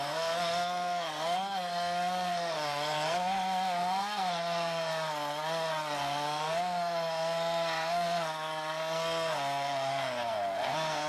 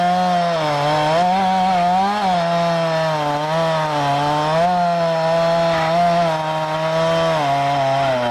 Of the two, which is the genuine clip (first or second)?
second